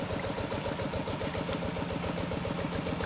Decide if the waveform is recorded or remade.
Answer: recorded